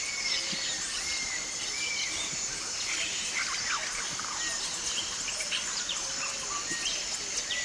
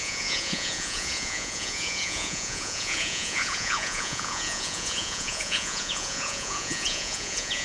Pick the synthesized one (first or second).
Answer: second